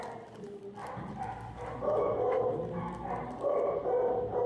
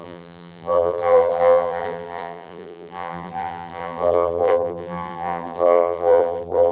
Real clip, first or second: first